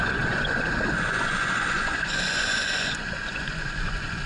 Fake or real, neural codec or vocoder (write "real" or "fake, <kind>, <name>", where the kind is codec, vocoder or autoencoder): fake, vocoder, Vocos